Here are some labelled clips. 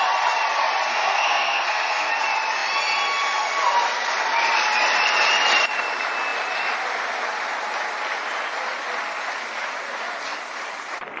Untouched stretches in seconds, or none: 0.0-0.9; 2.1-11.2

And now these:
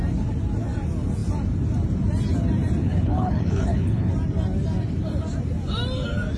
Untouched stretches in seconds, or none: 0.0-2.8; 4.1-6.4

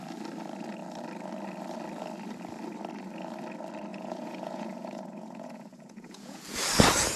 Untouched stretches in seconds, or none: 0.0-3.9; 6.4-7.2

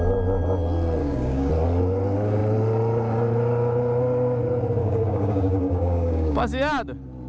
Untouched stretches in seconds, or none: 0.0-1.0; 1.5-4.8; 6.4-7.3

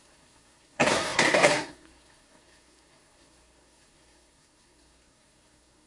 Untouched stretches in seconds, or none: none